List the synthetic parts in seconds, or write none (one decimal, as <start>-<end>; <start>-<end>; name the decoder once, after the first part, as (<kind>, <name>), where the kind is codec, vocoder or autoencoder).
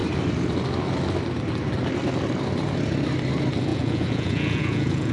3.7-5.1 (vocoder, Vocos)